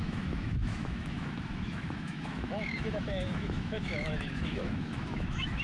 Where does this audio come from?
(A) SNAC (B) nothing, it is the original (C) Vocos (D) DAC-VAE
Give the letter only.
D